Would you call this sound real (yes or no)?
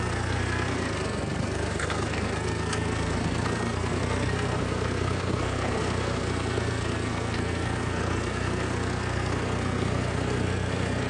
no